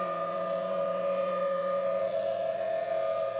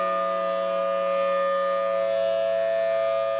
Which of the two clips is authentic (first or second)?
second